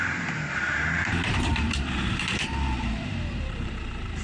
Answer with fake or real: fake